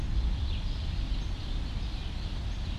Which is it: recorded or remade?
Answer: recorded